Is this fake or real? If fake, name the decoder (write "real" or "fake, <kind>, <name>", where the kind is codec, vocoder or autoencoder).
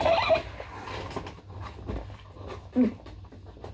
real